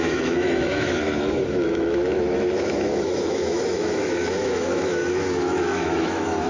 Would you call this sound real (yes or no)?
no